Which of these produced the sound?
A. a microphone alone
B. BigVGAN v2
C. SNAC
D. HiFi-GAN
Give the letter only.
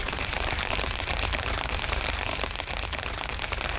B